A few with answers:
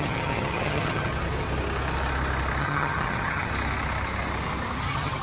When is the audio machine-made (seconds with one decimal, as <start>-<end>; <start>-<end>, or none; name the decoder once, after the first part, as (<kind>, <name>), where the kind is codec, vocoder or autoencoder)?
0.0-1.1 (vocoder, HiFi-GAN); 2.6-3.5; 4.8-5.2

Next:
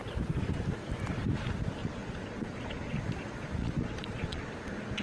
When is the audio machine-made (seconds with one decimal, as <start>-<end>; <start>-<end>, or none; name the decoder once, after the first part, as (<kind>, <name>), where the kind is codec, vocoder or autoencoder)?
1.8-3.0 (vocoder, Vocos); 3.6-4.5

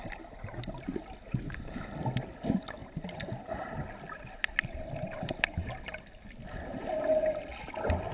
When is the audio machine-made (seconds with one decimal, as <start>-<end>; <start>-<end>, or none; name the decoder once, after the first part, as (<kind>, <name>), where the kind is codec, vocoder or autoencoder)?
none

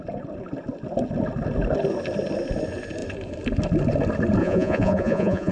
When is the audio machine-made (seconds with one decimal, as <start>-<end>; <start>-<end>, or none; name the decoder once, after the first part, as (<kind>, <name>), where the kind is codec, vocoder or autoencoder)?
4.4-5.5 (vocoder, Vocos)

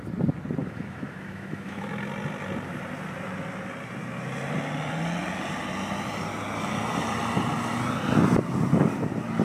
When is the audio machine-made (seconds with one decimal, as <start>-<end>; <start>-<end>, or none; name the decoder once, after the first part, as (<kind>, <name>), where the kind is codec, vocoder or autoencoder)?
0.6-1.9 (autoencoder, DAC-VAE)

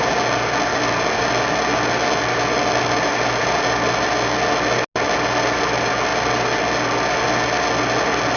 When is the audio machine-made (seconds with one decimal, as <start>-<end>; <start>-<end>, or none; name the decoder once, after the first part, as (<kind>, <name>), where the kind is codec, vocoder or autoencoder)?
none

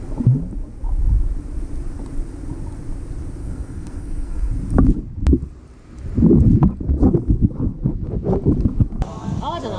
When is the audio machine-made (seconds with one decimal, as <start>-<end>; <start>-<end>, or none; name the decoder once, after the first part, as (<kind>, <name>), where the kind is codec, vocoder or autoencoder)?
3.4-4.5 (codec, SNAC)